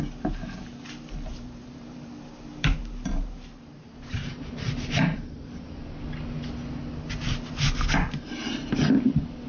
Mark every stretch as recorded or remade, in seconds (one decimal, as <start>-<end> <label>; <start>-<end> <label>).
0.0-1.3 recorded; 1.3-5.8 remade; 5.8-9.5 recorded